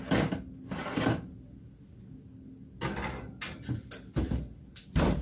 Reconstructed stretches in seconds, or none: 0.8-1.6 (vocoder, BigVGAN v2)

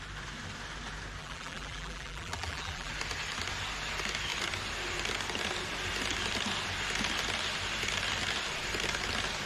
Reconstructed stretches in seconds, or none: 1.2-2.9 (vocoder, BigVGAN v2)